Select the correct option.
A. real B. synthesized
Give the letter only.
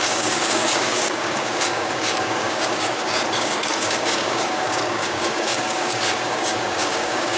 B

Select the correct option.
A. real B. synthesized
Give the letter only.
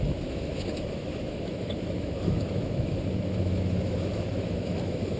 B